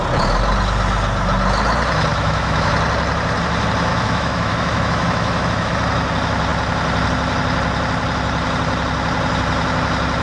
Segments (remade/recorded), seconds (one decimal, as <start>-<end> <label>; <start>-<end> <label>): 0.0-2.1 recorded; 2.1-2.7 remade; 2.7-3.9 recorded; 3.9-5.7 remade; 5.7-10.2 recorded